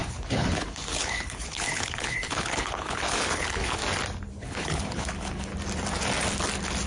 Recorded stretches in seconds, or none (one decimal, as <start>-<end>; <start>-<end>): 3.8-4.3; 5.5-6.9